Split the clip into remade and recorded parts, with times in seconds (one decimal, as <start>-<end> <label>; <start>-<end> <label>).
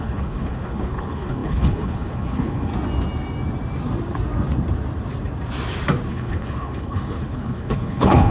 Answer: 0.0-2.7 remade; 2.7-6.1 recorded; 6.1-8.3 remade